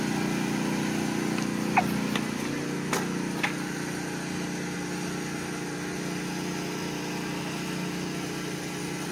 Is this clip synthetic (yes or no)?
no